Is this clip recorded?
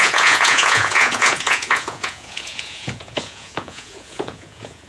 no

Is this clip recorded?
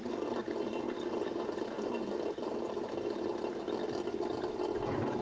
yes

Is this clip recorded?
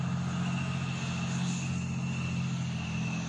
yes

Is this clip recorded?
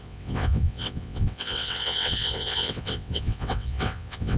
no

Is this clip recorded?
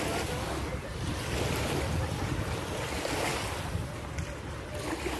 yes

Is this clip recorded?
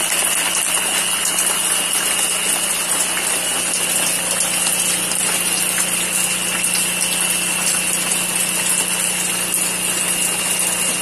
yes